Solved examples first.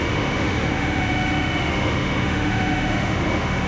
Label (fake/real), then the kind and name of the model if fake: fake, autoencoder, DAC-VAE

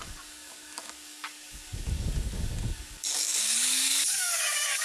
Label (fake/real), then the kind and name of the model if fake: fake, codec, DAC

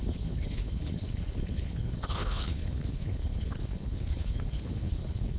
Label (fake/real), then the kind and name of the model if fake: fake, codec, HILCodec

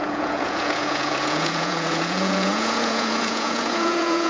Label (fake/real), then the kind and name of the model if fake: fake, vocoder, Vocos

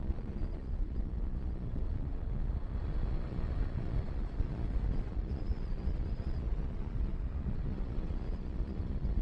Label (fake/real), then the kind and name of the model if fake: fake, vocoder, Vocos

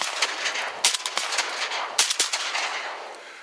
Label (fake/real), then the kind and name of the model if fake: real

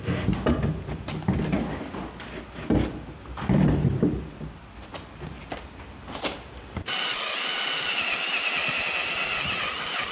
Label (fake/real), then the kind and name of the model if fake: real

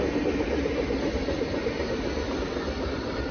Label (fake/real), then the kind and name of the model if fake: real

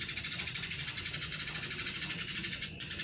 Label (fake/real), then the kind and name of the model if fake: fake, vocoder, Vocos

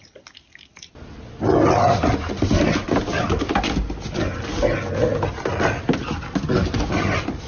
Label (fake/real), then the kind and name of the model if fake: real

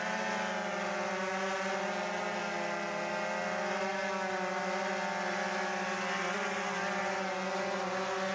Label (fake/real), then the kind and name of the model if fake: real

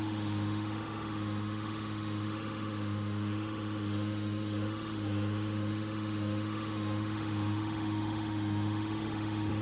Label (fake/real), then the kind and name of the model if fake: fake, autoencoder, DAC-VAE